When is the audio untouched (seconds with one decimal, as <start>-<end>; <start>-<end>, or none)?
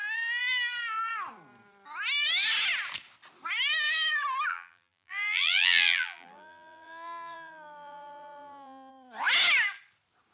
0.0-4.5; 8.9-10.3